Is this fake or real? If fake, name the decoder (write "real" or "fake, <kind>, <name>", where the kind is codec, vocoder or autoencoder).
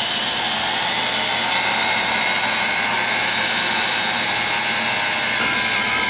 real